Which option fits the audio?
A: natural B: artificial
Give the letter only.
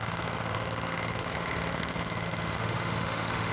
B